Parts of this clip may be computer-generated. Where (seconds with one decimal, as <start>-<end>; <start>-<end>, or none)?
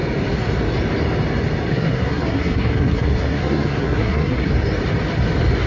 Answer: 1.7-4.5